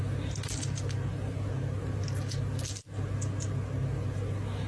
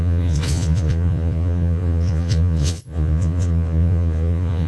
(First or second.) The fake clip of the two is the second